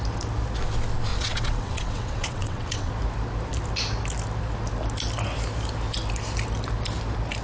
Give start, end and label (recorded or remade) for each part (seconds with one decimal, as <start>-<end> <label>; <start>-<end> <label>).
0.0-1.1 recorded; 1.1-2.9 remade; 2.9-7.4 recorded